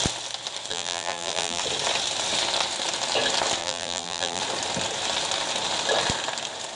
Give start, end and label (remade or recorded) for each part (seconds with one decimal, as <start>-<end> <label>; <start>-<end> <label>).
0.0-0.7 recorded; 0.7-1.6 remade; 1.6-3.6 recorded; 3.6-4.4 remade; 4.4-6.8 recorded